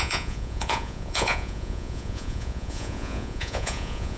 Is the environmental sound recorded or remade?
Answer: remade